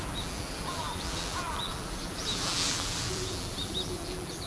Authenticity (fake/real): fake